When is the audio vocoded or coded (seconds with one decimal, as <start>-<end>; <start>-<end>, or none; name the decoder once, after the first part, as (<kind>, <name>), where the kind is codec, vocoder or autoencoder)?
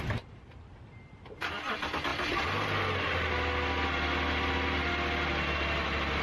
none